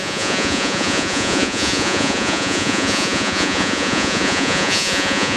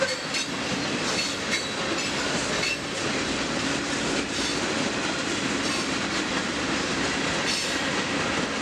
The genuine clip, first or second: second